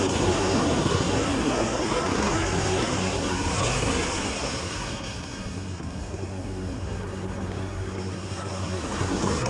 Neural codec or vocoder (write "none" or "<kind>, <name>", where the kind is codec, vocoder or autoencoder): codec, SNAC